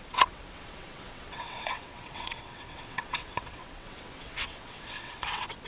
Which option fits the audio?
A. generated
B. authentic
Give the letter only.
A